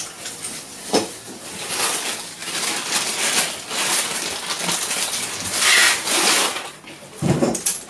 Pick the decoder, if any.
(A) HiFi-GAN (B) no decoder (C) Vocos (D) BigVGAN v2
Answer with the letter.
B